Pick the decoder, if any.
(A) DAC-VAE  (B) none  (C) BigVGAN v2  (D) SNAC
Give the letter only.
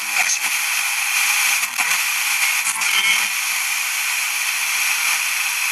B